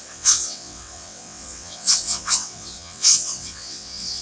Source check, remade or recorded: remade